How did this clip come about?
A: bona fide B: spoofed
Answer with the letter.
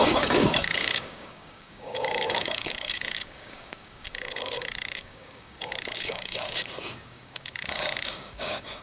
B